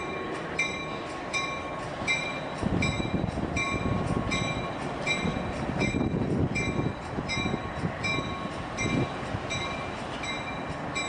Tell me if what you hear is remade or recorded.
recorded